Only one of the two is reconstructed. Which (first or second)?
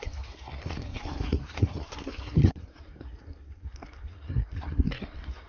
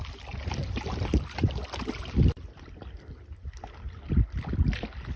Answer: first